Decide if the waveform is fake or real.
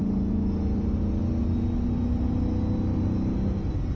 real